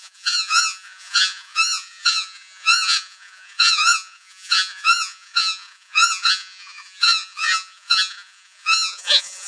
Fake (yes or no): yes